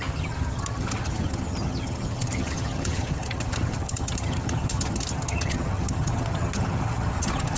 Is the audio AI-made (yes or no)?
yes